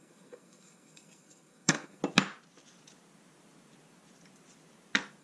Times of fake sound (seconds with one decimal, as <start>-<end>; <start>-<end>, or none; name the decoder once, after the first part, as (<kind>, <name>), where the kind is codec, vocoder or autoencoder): 0.0-2.0 (codec, SNAC)